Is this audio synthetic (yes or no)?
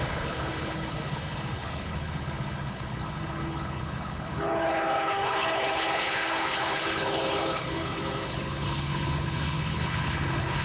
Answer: yes